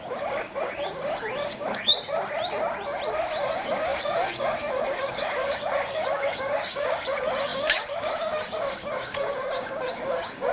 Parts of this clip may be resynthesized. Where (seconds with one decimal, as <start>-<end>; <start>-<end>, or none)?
0.0-1.9; 3.1-10.5